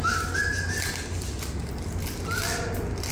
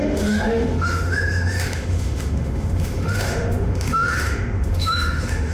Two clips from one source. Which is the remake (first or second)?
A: second